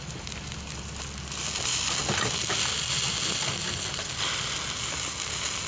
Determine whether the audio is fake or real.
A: real